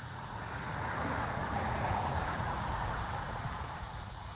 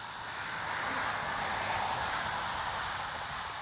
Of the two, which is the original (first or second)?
second